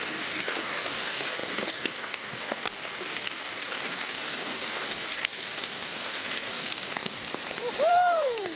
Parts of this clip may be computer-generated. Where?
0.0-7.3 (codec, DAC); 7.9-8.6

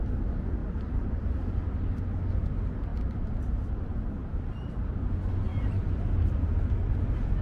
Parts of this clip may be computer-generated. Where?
0.6-1.3 (vocoder, BigVGAN v2); 2.9-3.6; 5.5-6.4

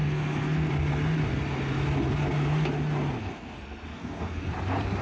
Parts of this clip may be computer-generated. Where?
0.0-0.7 (codec, SNAC); 3.2-4.5

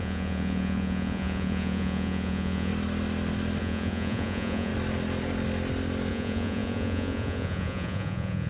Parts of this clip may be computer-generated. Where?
0.0-2.7 (vocoder, Vocos); 3.6-4.7; 6.1-8.5

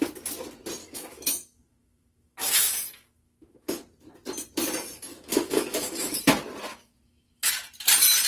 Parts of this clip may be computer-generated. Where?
0.8-3.8 (autoencoder, DAC-VAE); 5.1-6.2; 6.7-7.5

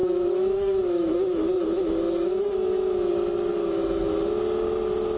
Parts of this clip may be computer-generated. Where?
0.0-3.1 (autoencoder, DAC-VAE); 3.5-4.1